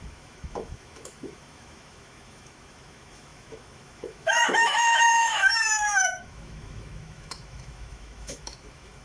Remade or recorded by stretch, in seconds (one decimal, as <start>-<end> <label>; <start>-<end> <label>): 0.0-9.0 remade